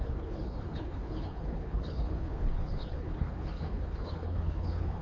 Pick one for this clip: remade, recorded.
remade